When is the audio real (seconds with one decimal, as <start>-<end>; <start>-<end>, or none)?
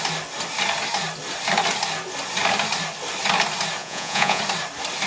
0.0-3.8; 4.4-5.1